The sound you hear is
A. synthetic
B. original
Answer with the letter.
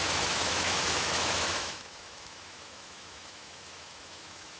A